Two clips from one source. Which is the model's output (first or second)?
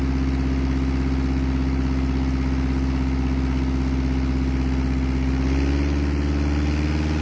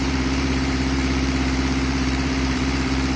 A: second